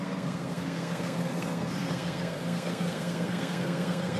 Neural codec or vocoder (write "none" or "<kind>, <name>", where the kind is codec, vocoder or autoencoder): codec, SNAC